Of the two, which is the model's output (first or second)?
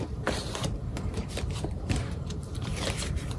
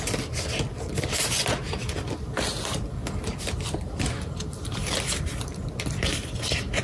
first